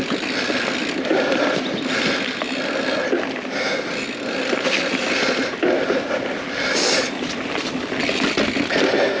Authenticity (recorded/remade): recorded